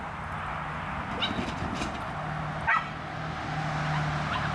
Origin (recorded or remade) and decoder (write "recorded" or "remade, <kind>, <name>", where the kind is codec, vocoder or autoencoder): recorded